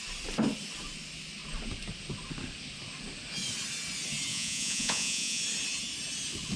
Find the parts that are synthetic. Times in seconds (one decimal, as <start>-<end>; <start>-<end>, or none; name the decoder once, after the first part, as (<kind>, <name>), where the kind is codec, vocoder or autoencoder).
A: 4.3-5.4 (vocoder, Vocos)